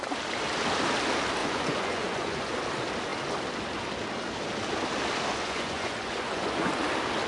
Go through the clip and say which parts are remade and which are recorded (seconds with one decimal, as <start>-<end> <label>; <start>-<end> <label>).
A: 0.0-1.4 recorded; 1.4-2.5 remade; 2.5-5.3 recorded; 5.3-6.7 remade; 6.7-7.3 recorded